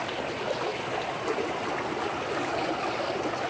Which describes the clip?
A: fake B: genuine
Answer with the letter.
B